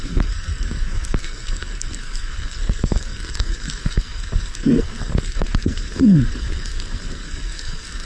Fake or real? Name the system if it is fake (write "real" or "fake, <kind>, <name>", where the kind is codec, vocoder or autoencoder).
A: fake, codec, SNAC